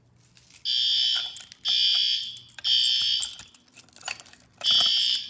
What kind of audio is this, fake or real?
real